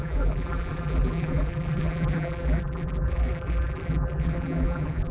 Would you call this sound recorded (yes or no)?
no